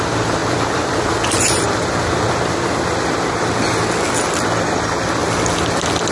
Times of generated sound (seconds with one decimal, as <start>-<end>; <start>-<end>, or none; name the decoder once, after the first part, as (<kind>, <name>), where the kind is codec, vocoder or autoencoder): 0.4-3.2 (vocoder, BigVGAN v2)